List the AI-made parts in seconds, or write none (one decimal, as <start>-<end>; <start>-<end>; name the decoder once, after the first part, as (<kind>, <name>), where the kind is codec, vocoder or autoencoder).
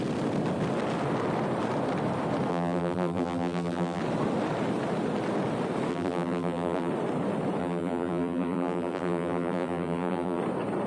2.5-4.0 (vocoder, BigVGAN v2); 5.9-6.9; 7.6-10.4